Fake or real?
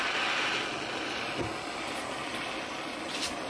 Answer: real